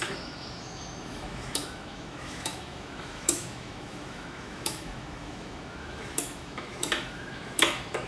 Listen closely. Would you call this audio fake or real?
fake